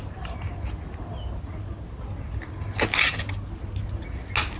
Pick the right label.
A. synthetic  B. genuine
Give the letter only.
B